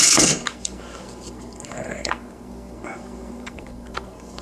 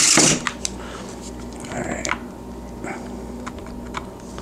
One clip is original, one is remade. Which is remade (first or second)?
first